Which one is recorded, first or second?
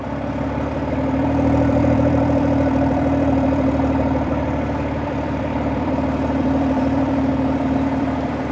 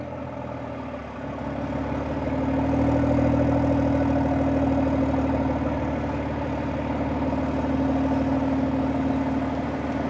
second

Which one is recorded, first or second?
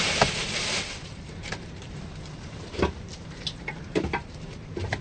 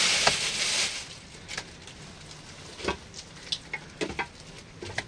second